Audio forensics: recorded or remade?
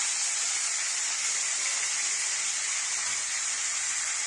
recorded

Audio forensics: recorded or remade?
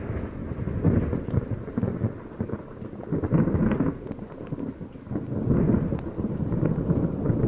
recorded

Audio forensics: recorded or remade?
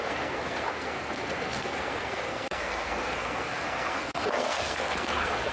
remade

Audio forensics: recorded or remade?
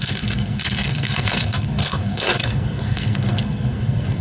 remade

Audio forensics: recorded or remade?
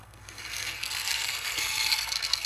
remade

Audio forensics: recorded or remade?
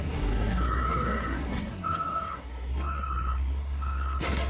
remade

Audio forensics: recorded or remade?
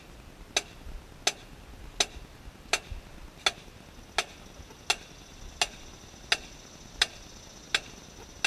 recorded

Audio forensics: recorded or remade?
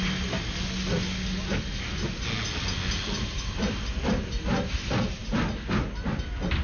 recorded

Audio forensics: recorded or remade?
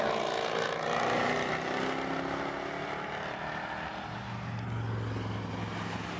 recorded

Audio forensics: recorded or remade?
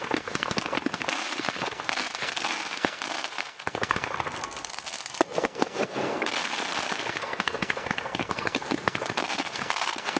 remade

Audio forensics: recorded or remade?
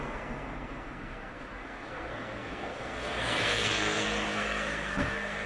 remade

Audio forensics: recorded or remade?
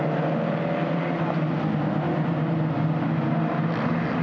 recorded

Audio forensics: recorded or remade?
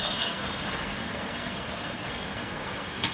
remade